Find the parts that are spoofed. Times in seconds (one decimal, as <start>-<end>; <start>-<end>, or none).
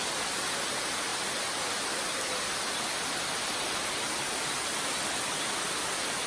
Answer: none